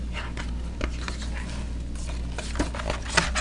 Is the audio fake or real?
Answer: real